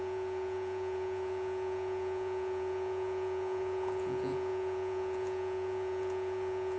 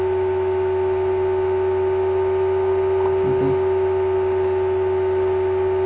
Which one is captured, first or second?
second